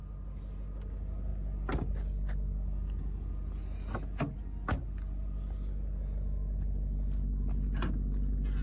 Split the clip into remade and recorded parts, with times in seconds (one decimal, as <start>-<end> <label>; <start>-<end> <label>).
0.0-8.6 recorded